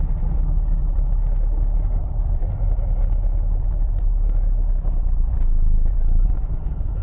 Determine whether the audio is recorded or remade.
remade